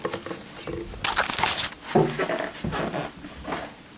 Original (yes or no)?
yes